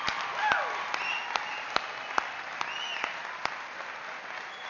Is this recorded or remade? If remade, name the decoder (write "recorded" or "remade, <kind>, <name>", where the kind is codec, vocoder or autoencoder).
recorded